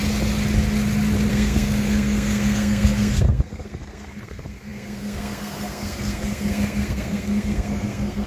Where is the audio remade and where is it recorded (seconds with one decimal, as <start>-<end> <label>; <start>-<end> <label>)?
0.0-1.3 recorded; 1.3-8.3 remade